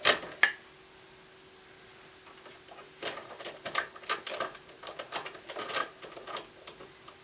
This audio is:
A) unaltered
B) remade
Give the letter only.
A